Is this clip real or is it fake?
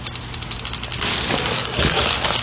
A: real